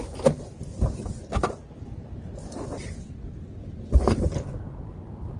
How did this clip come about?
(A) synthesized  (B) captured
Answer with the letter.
B